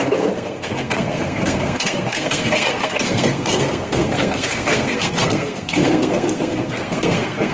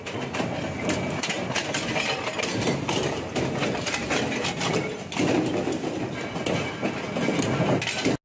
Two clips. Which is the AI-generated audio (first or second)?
first